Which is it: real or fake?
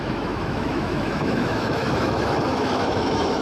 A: fake